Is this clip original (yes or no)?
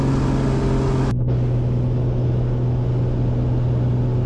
yes